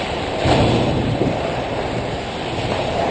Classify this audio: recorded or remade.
remade